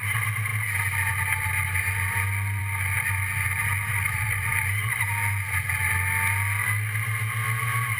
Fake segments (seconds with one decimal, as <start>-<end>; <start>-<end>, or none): none